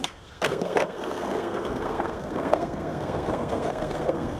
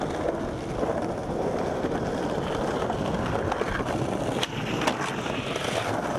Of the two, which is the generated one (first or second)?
first